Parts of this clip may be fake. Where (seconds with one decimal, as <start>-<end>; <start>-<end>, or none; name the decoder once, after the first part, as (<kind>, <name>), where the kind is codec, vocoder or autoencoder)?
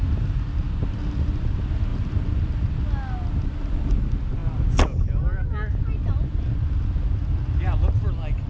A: none